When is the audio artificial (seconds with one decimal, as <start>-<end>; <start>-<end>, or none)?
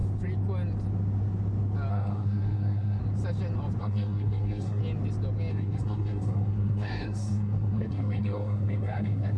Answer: 1.9-3.0; 3.8-4.8; 5.5-9.4